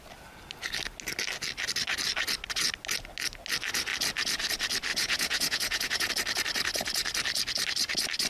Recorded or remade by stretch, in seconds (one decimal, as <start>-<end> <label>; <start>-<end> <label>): 0.0-4.9 recorded; 4.9-6.1 remade; 6.1-8.3 recorded